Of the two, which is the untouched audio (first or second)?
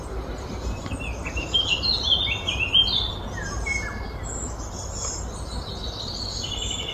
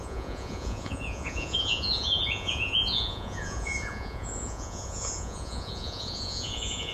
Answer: first